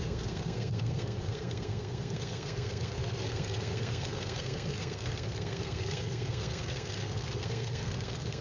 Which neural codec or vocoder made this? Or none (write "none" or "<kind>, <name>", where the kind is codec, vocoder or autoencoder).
codec, SNAC